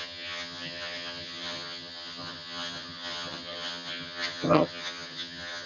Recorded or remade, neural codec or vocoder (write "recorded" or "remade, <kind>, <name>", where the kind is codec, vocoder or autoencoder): remade, vocoder, HiFi-GAN